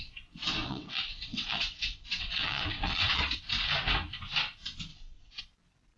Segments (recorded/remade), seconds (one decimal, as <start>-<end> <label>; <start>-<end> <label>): 0.0-0.6 recorded; 0.6-3.2 remade; 3.2-4.9 recorded; 4.9-5.4 remade; 5.4-6.0 recorded